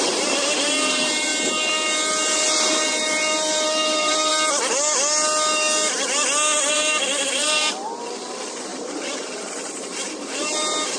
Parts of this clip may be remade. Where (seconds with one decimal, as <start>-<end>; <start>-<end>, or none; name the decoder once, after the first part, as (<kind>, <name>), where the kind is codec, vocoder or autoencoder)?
0.0-1.3 (vocoder, BigVGAN v2); 2.7-4.3; 6.7-11.0